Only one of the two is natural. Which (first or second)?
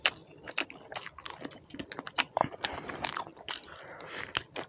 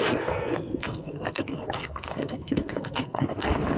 first